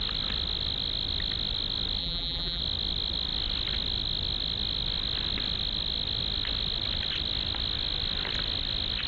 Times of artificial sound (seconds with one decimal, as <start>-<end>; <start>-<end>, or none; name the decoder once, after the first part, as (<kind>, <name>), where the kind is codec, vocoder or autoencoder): 2.0-2.6 (vocoder, BigVGAN v2)